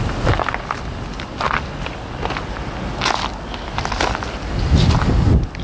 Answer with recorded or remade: recorded